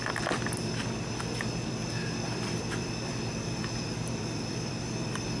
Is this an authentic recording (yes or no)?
no